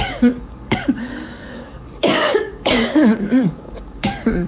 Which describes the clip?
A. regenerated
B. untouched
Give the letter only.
A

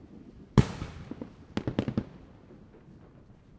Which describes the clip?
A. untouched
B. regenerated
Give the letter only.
A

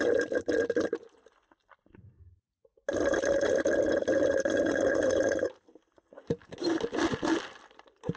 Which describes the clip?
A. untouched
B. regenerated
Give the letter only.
A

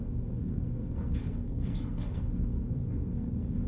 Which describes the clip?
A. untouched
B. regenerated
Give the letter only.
B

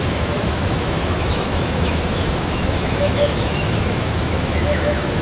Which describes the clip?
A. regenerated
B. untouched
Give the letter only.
A